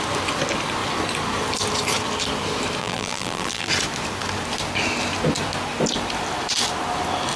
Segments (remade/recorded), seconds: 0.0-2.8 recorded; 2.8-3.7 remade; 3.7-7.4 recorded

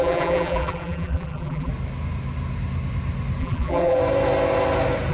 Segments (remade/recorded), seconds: 0.0-1.7 remade; 1.7-3.4 recorded; 3.4-4.0 remade; 4.0-5.1 recorded

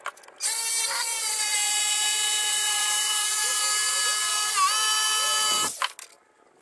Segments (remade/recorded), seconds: 0.0-1.1 recorded; 1.1-3.6 remade; 3.6-6.6 recorded

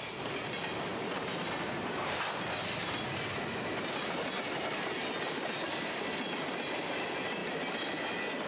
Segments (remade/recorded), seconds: 0.0-8.5 recorded

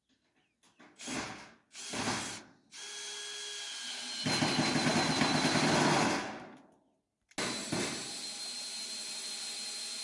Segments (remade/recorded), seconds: 0.0-10.0 recorded

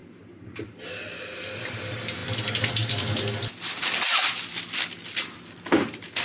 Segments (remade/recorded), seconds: 0.0-1.0 remade; 1.0-6.2 recorded

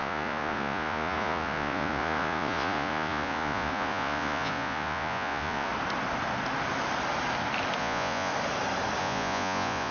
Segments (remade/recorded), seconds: 0.0-5.7 remade; 5.7-7.8 recorded; 7.8-8.3 remade; 8.3-9.0 recorded; 9.0-9.9 remade

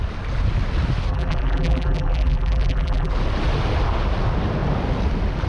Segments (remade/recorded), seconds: 0.0-1.1 recorded; 1.1-3.1 remade; 3.1-5.5 recorded